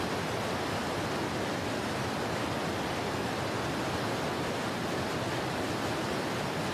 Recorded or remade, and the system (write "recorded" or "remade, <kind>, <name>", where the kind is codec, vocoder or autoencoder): recorded